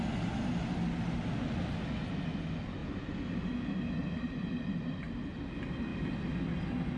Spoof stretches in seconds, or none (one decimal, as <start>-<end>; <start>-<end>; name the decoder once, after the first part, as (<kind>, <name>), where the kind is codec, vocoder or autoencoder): none